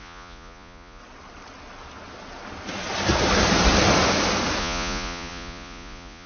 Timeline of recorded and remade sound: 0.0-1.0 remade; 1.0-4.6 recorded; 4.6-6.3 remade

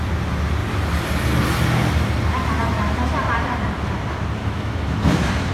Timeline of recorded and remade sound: 0.0-4.4 recorded; 4.4-5.5 remade

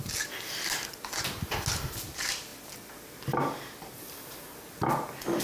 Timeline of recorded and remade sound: 0.0-5.4 recorded

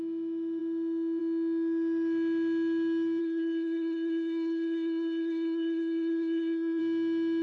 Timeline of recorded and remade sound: 0.0-3.2 recorded; 3.2-6.8 remade; 6.8-7.4 recorded